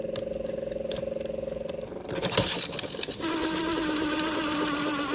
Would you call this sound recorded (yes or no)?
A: yes